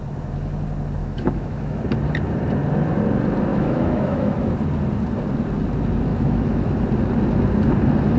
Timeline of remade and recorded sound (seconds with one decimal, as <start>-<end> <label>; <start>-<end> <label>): 0.0-1.0 recorded; 1.0-1.8 remade; 1.8-3.5 recorded; 3.5-4.5 remade; 4.5-6.1 recorded; 6.1-6.8 remade; 6.8-8.2 recorded